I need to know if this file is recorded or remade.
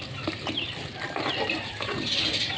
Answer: recorded